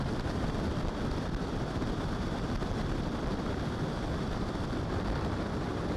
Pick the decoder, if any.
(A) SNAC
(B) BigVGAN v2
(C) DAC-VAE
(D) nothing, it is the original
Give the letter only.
B